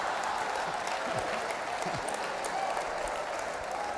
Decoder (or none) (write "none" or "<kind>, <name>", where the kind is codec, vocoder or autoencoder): none